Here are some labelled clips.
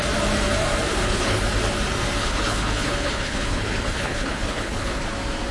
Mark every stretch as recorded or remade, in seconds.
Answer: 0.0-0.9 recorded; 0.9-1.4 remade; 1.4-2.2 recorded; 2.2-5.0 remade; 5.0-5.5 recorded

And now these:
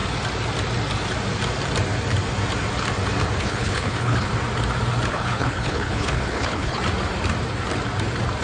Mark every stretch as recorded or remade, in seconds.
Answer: 0.0-3.4 recorded; 3.4-4.3 remade; 4.3-5.1 recorded; 5.1-6.8 remade; 6.8-8.4 recorded

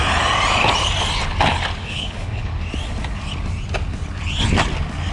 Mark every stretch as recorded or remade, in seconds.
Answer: 0.0-1.8 recorded; 1.8-2.5 remade; 2.5-5.1 recorded

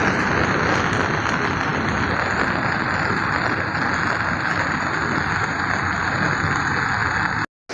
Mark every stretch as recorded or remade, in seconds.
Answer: 0.0-7.7 recorded

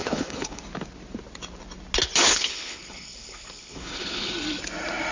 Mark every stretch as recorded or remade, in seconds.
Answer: 0.0-0.6 remade; 0.6-2.2 recorded; 2.2-4.3 remade; 4.3-5.1 recorded

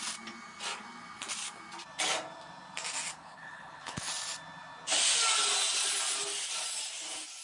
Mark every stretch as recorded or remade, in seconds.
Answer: 0.0-3.1 recorded; 3.1-4.1 remade; 4.1-7.4 recorded

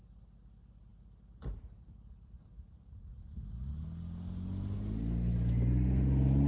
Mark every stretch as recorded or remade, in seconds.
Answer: 0.0-6.5 recorded

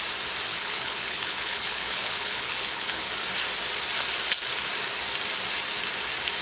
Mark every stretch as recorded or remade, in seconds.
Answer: 0.0-0.5 recorded; 0.5-3.0 remade; 3.0-6.4 recorded